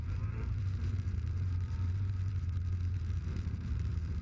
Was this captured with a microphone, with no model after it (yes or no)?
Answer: no